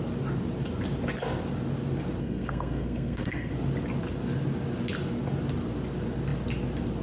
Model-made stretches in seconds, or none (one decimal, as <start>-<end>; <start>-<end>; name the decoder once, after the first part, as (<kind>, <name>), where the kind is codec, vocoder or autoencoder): 2.2-3.5 (codec, SNAC)